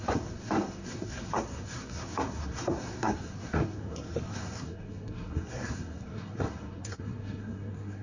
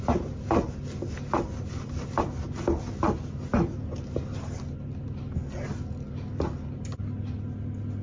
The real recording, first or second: second